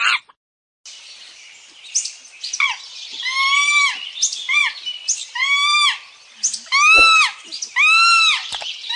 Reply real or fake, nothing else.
real